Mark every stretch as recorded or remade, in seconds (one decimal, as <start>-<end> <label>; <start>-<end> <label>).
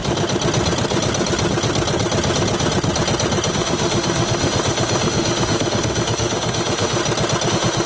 0.0-3.5 recorded; 3.5-7.0 remade; 7.0-7.5 recorded; 7.5-7.9 remade